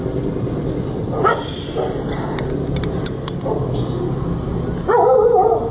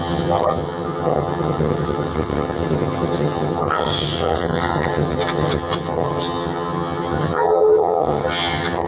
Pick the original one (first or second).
first